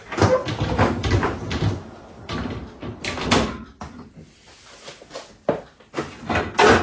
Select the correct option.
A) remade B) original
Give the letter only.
B